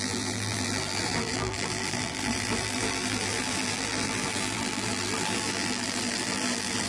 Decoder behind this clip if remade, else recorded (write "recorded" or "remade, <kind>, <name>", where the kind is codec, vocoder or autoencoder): remade, vocoder, BigVGAN v2